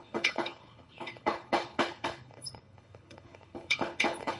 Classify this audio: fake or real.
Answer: fake